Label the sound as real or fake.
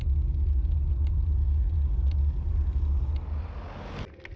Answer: real